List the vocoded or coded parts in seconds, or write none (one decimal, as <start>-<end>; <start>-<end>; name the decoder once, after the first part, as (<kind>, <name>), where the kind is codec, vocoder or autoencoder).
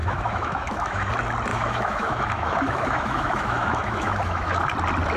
0.0-1.1 (autoencoder, DAC-VAE); 1.5-4.6